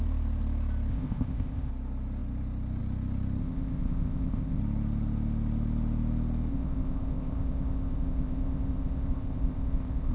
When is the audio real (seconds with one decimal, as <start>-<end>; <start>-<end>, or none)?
0.0-0.9; 1.7-3.4; 4.6-6.5